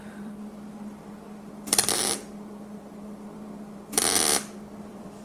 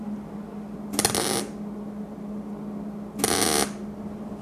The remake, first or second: first